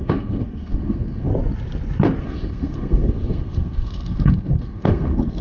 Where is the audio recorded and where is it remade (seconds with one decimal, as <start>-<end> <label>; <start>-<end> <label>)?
0.0-1.3 remade; 1.3-2.2 recorded; 2.2-5.4 remade